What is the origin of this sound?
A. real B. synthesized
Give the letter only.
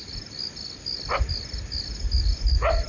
A